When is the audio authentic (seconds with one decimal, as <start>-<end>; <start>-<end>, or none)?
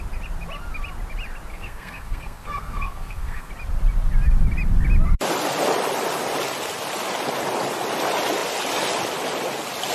0.0-1.5; 3.5-9.9